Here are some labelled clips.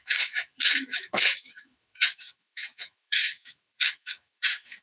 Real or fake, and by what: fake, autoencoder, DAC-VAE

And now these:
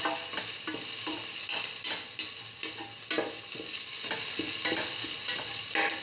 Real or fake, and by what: real